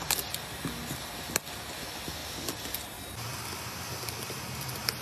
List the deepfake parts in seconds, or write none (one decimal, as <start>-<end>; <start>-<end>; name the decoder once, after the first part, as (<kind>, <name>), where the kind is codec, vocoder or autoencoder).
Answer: none